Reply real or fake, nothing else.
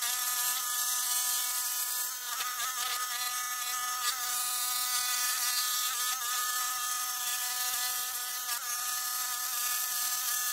real